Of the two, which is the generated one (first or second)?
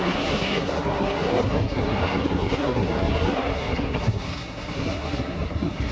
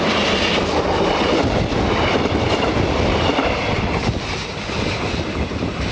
first